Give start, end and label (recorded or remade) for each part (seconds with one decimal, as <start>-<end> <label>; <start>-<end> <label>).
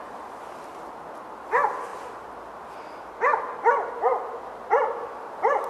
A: 0.0-5.7 recorded